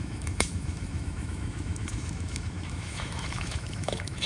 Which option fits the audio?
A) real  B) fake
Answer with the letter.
B